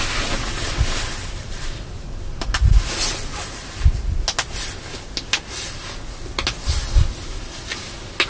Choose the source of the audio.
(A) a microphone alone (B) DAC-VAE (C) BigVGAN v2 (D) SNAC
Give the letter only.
A